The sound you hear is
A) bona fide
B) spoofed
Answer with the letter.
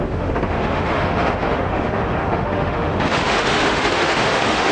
B